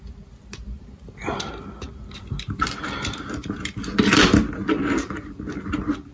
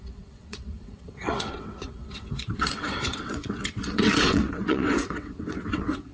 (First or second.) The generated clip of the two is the second